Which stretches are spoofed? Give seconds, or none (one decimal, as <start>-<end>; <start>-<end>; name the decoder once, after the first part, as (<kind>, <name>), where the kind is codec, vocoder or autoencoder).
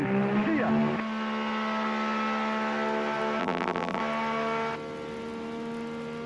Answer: 3.4-4.0 (vocoder, BigVGAN v2)